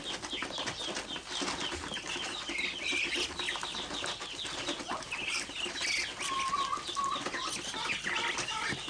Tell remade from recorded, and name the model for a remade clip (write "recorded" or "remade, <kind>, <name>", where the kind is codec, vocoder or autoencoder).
recorded